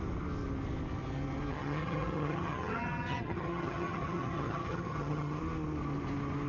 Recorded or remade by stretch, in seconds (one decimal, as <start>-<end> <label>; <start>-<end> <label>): 0.0-1.5 recorded; 1.5-5.4 remade; 5.4-6.5 recorded